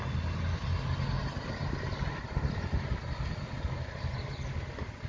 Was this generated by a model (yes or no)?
no